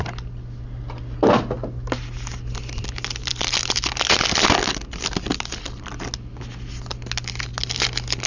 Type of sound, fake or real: real